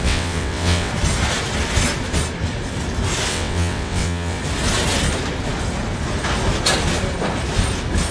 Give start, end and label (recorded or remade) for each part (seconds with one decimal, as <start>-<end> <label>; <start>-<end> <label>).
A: 0.0-0.9 remade; 0.9-3.3 recorded; 3.3-4.4 remade; 4.4-8.1 recorded